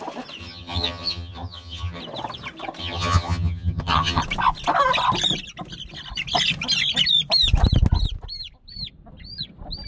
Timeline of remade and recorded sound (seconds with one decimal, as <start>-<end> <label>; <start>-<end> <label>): 0.0-0.4 recorded; 0.4-2.0 remade; 2.0-2.8 recorded; 2.8-4.2 remade; 4.2-9.9 recorded